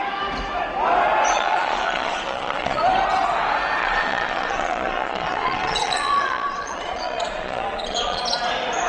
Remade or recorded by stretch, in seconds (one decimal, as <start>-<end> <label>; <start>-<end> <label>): 0.0-1.3 recorded; 1.3-2.8 remade; 2.8-3.8 recorded; 3.8-8.2 remade; 8.2-8.9 recorded